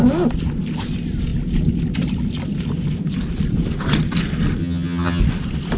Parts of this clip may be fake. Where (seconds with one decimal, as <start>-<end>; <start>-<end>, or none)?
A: 4.6-5.2